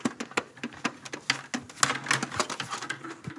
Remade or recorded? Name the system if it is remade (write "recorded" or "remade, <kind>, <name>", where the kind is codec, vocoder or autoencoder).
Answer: recorded